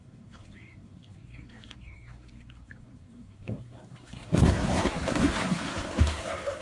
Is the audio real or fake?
fake